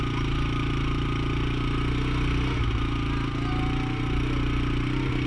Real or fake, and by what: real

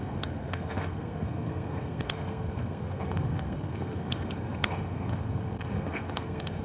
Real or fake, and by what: fake, codec, SNAC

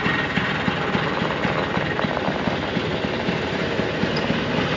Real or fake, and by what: real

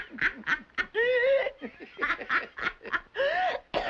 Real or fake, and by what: real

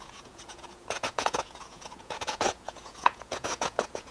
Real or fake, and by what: fake, vocoder, Vocos